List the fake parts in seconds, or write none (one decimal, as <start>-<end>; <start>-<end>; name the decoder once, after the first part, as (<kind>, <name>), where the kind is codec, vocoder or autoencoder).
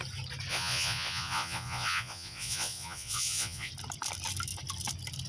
0.5-3.7 (vocoder, Vocos)